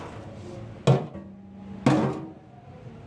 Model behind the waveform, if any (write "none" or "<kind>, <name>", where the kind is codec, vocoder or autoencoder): none